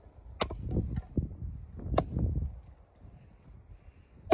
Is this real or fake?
real